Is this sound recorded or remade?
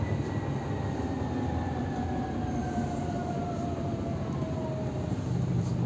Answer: recorded